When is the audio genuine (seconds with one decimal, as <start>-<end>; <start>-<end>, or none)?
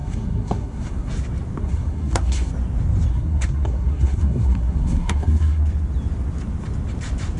1.1-1.6; 2.5-3.1; 5.6-7.4